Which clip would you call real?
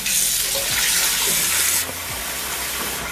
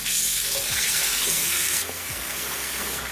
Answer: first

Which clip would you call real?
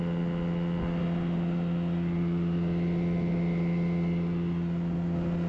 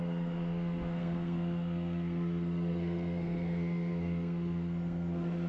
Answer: first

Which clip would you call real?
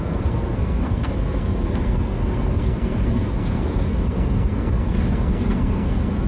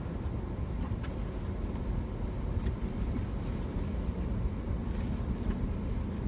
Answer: second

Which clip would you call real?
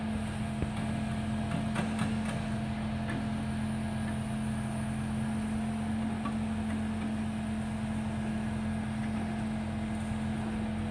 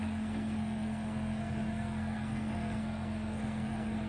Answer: first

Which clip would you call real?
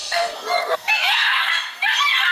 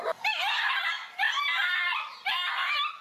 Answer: second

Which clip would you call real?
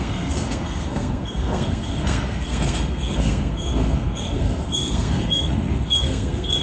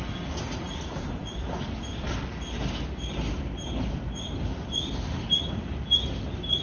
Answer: second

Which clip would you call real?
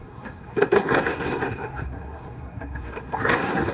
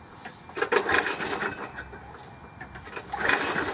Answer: second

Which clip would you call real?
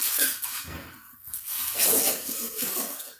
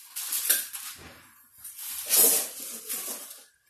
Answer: second